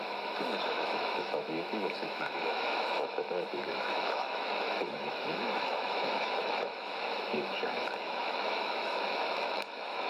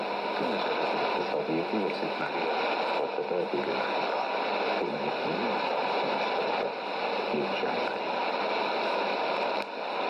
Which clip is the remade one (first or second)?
first